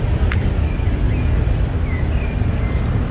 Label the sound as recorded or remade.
recorded